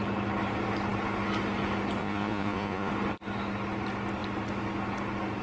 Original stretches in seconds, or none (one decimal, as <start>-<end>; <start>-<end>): 0.0-2.0; 2.9-5.4